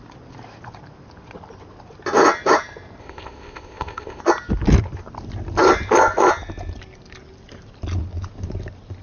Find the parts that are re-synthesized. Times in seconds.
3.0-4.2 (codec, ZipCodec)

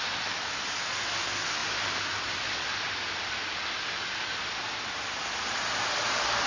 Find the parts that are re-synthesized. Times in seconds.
none

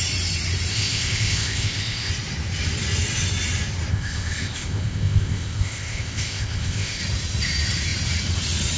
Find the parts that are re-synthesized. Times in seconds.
0.7-2.1 (codec, ZipCodec); 3.9-7.0